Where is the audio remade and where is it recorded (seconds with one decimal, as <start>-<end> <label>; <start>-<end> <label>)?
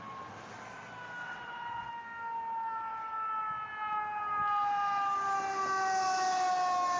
0.0-1.2 recorded; 1.2-1.9 remade; 1.9-7.0 recorded